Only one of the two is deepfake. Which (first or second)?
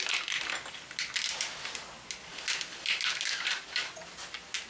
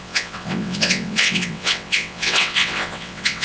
second